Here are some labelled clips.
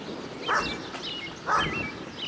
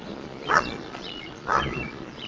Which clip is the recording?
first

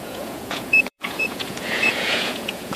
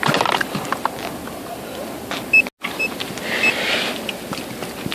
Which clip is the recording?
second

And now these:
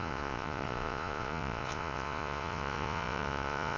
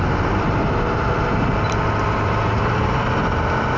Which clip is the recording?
second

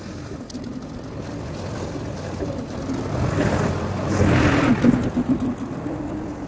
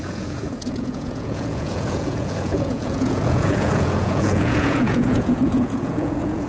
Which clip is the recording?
first